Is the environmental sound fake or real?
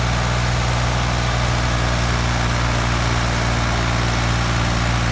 real